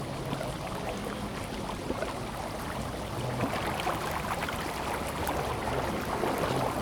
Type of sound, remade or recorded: recorded